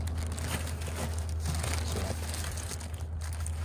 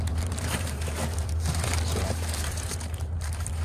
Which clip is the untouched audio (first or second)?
first